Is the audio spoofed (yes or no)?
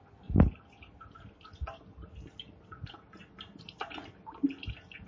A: no